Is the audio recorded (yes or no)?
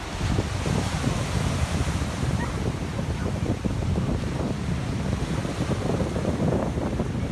no